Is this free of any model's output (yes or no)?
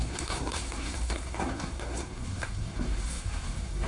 no